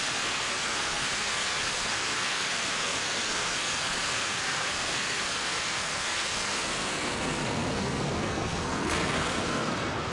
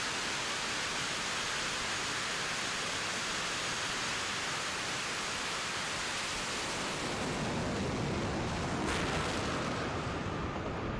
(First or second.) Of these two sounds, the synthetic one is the first